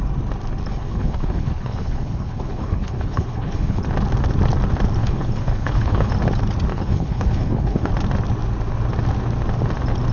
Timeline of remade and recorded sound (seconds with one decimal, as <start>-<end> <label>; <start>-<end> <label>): 0.0-0.7 recorded; 0.7-3.8 remade; 3.8-5.0 recorded; 5.0-6.1 remade; 6.1-6.7 recorded; 6.7-7.9 remade; 7.9-10.1 recorded